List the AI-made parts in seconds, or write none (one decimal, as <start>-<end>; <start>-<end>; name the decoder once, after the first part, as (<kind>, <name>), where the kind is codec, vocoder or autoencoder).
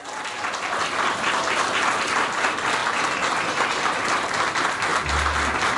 0.0-2.8 (vocoder, BigVGAN v2); 4.5-4.9